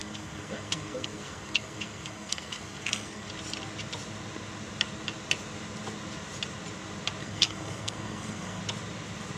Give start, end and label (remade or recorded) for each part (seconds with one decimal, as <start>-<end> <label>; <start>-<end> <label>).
0.0-3.3 remade; 3.3-7.2 recorded; 7.2-8.6 remade; 8.6-9.4 recorded